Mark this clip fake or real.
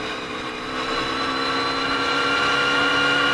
real